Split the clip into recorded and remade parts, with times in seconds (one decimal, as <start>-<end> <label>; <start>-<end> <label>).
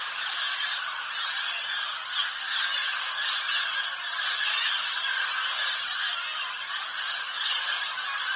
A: 0.0-8.4 recorded